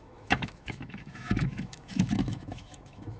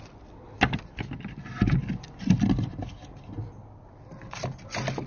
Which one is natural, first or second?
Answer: second